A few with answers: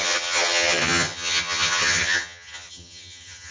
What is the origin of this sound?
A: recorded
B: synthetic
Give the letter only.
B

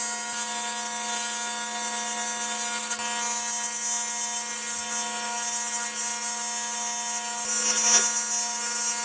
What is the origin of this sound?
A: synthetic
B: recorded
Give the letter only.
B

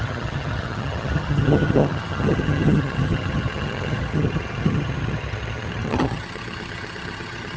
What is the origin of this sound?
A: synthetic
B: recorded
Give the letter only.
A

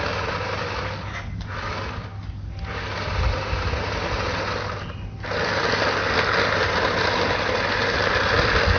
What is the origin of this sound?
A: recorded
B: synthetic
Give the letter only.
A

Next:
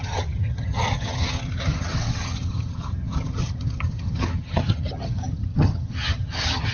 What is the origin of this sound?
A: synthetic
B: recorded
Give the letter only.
A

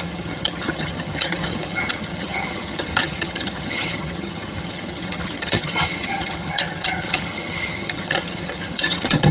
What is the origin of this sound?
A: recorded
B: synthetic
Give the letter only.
B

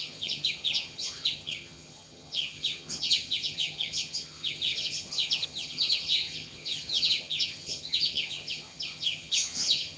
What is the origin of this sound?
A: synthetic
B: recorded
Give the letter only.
A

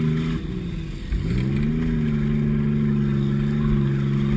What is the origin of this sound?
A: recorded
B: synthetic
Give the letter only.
A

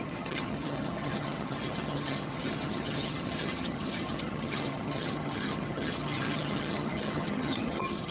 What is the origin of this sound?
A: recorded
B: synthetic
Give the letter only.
B